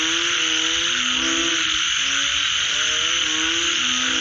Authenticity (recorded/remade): recorded